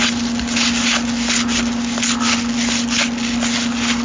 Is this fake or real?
real